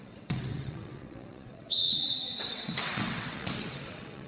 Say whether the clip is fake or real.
fake